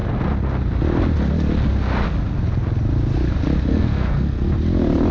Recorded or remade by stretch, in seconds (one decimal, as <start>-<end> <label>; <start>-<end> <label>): 0.0-3.7 recorded; 3.7-4.5 remade; 4.5-5.1 recorded